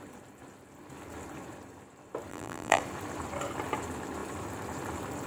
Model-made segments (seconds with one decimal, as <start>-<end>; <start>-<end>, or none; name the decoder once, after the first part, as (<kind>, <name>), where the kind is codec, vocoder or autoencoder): 2.3-2.8 (vocoder, BigVGAN v2)